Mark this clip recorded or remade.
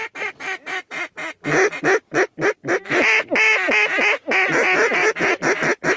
recorded